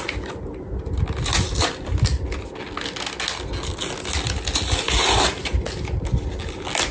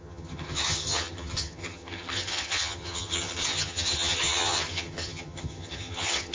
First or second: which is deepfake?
second